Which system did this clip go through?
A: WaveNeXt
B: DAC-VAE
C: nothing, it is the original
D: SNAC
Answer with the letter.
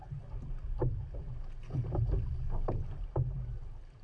C